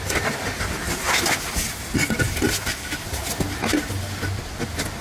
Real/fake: real